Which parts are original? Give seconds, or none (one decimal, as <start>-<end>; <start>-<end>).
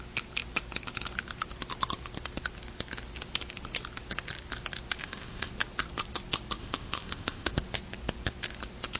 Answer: 0.0-5.0; 5.5-6.6; 7.5-9.0